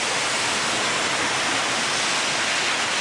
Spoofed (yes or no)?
no